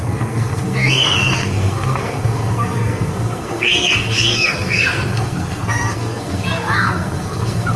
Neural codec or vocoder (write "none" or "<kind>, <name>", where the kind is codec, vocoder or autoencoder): codec, SNAC